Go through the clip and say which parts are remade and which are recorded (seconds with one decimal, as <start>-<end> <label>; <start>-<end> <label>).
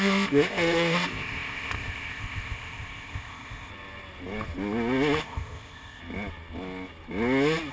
0.0-3.7 remade; 3.7-5.2 recorded; 5.2-6.0 remade; 6.0-7.7 recorded